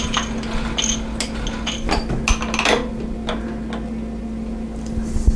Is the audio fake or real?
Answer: real